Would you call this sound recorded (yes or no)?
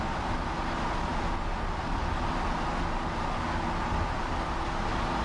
yes